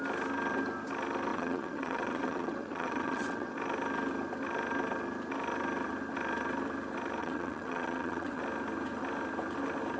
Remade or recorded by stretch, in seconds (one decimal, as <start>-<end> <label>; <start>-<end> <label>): 0.0-1.3 recorded; 1.3-3.5 remade; 3.5-7.2 recorded; 7.2-8.4 remade; 8.4-10.0 recorded